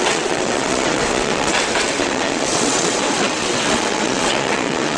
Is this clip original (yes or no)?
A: no